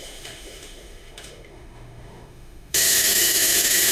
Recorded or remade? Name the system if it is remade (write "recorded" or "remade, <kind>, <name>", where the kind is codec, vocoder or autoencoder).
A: remade, autoencoder, DAC-VAE